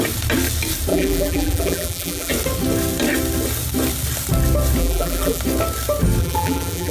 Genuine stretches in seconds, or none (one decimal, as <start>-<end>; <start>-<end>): 0.0-0.9; 2.3-4.8; 5.4-6.2